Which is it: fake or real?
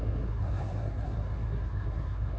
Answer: fake